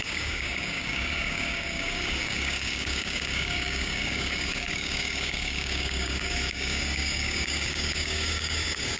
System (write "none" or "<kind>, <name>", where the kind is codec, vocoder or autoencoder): codec, DAC